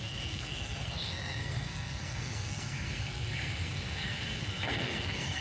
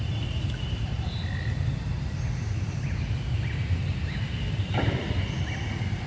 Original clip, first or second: second